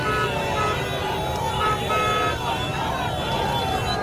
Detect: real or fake real